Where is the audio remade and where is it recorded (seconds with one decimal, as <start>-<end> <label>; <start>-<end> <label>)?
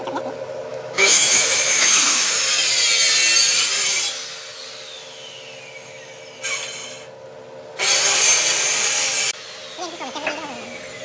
0.0-0.7 recorded; 0.7-2.4 remade; 2.4-11.0 recorded